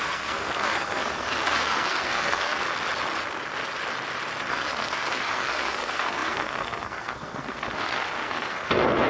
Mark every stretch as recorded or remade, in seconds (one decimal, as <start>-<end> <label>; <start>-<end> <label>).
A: 0.0-2.6 remade; 2.6-4.5 recorded; 4.5-9.1 remade